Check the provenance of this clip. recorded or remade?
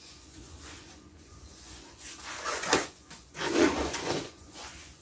remade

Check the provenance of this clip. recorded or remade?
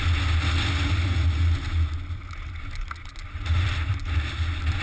recorded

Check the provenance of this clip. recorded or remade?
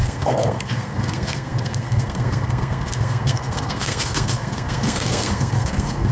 remade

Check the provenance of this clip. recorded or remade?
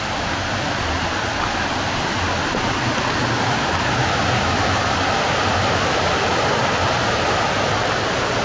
recorded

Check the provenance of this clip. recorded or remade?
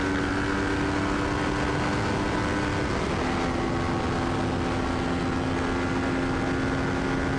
recorded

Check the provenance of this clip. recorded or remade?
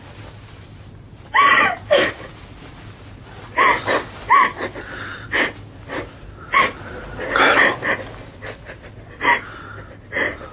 recorded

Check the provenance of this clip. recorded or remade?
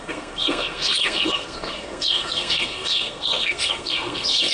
remade